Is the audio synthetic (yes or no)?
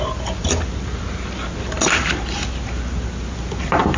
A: no